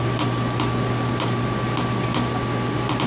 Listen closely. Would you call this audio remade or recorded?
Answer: recorded